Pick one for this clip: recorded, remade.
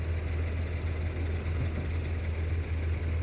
recorded